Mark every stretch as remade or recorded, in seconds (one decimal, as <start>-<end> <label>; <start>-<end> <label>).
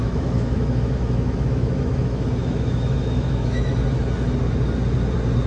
0.0-3.7 remade; 3.7-5.5 recorded